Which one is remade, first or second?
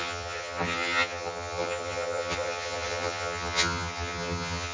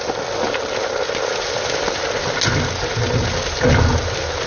first